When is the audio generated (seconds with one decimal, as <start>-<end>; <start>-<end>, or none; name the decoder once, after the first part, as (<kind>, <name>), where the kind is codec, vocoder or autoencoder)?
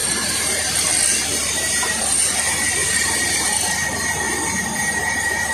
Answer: 0.0-0.6 (vocoder, BigVGAN v2); 1.3-2.3; 2.8-3.8; 4.3-5.5